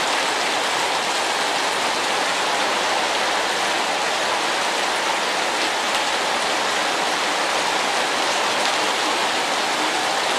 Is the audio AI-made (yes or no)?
no